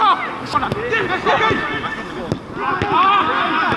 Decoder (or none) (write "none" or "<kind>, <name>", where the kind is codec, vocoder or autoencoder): none